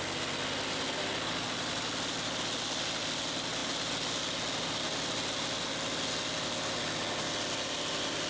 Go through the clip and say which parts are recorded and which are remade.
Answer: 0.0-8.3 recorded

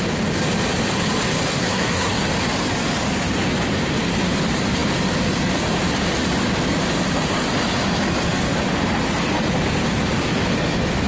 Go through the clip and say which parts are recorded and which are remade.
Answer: 0.0-1.5 recorded; 1.5-2.1 remade; 2.1-11.1 recorded

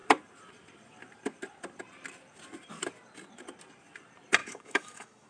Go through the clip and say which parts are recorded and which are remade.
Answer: 0.0-4.4 recorded; 4.4-5.3 remade

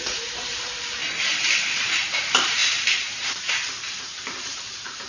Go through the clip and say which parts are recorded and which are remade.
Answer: 0.0-1.0 remade; 1.0-1.7 recorded; 1.7-5.1 remade

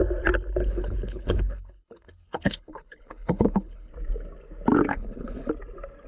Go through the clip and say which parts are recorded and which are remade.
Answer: 0.0-0.6 recorded; 0.6-3.9 remade; 3.9-4.9 recorded; 4.9-5.5 remade; 5.5-6.1 recorded

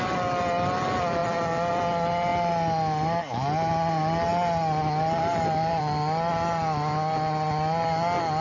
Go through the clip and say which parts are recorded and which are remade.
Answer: 0.0-8.4 recorded